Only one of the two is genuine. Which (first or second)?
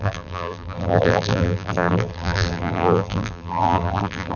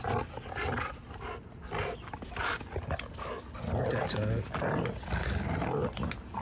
second